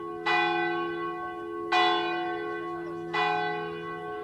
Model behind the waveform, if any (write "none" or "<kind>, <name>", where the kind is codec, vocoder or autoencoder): none